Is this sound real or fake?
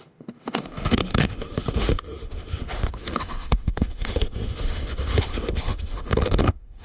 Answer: fake